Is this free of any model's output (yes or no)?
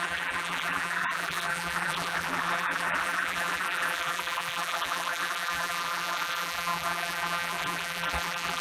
no